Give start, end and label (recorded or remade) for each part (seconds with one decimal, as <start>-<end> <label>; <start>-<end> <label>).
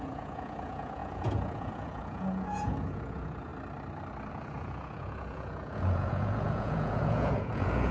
0.0-3.5 remade; 3.5-4.3 recorded; 4.3-7.9 remade